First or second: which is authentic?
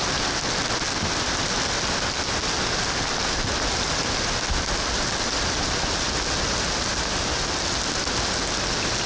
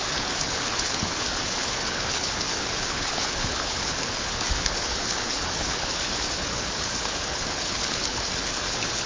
first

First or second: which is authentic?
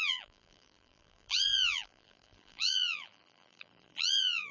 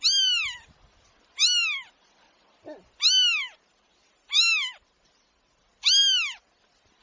second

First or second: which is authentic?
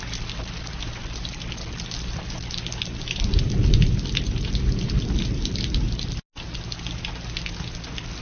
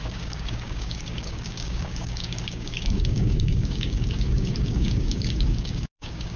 first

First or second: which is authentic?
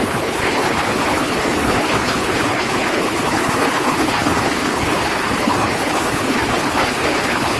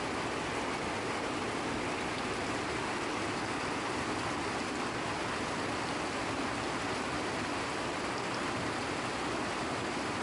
second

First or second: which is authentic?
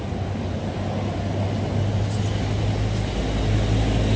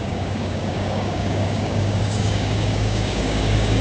first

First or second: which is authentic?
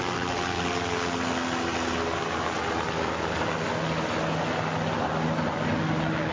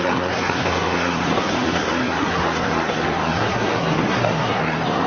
first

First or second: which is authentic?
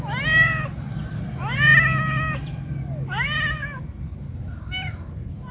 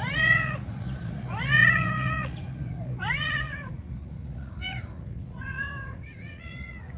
first